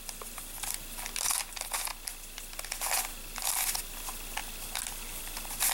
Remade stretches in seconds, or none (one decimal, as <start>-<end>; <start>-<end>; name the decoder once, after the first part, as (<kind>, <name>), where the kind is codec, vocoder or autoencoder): none